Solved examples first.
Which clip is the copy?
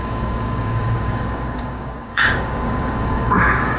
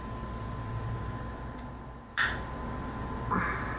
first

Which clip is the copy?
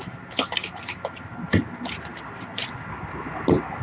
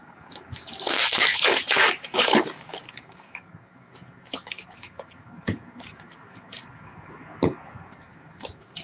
second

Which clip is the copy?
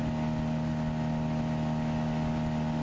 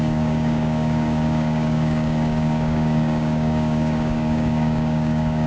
second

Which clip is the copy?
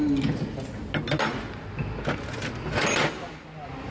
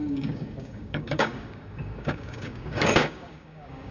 second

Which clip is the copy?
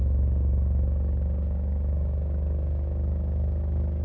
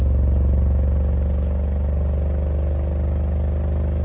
first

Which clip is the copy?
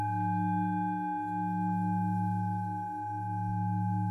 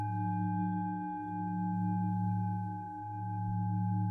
second